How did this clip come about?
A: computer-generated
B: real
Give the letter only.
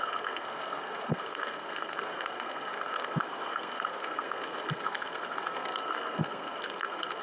A